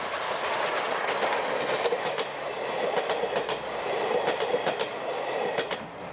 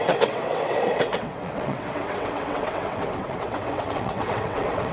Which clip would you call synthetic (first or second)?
second